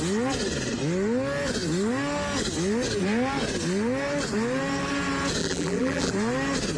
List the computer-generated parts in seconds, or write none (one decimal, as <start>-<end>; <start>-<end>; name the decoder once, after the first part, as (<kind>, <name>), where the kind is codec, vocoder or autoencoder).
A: 5.4-6.1 (vocoder, BigVGAN v2)